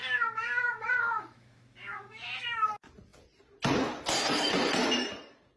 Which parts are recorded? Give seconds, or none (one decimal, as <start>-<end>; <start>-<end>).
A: 2.7-5.6